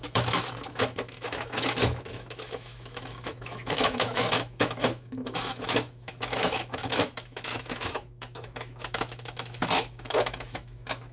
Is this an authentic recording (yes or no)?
no